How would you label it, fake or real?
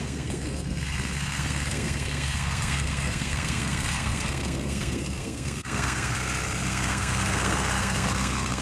fake